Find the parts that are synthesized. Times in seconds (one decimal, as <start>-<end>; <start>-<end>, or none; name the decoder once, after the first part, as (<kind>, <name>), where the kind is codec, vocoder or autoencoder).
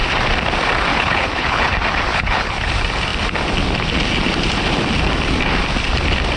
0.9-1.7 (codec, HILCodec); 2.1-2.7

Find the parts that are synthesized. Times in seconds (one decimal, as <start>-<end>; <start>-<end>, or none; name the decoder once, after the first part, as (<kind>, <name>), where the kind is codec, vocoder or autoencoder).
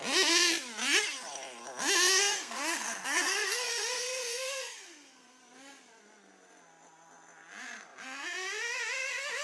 2.2-5.4 (codec, SNAC)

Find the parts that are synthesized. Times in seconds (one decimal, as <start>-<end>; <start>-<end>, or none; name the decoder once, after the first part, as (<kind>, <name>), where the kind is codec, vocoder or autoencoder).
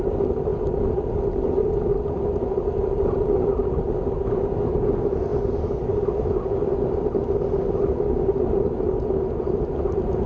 1.6-2.6 (vocoder, BigVGAN v2)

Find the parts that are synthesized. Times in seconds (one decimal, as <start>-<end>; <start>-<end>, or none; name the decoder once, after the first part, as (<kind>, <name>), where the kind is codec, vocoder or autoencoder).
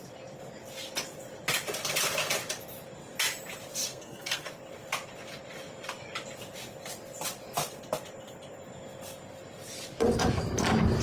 3.9-4.5 (codec, SNAC)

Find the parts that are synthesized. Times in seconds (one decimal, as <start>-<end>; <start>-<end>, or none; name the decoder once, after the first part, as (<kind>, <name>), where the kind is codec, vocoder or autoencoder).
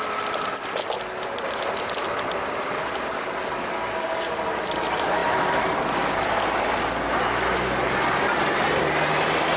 none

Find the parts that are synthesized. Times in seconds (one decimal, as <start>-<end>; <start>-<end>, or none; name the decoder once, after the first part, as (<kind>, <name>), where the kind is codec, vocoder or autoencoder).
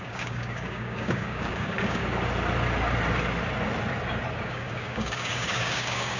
0.0-2.0 (codec, DAC); 4.4-6.2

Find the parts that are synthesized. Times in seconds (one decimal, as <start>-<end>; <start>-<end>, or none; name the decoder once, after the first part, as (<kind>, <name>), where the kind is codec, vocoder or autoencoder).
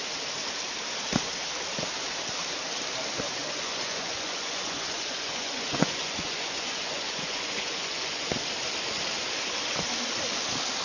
3.4-8.3 (vocoder, Vocos)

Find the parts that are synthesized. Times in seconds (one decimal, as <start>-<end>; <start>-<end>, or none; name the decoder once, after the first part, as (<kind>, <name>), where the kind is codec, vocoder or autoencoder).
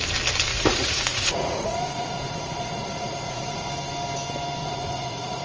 0.5-3.7 (vocoder, Vocos); 4.6-5.4